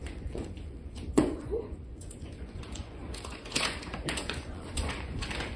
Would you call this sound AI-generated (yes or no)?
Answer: yes